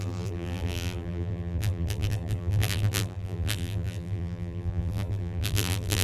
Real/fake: fake